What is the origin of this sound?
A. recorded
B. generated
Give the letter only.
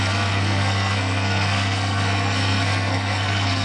B